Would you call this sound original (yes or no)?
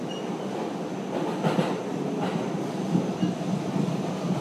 yes